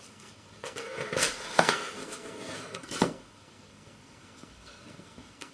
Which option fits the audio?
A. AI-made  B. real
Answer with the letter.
A